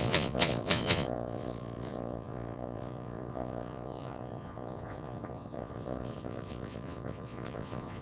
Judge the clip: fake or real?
fake